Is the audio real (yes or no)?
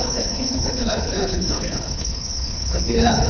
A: no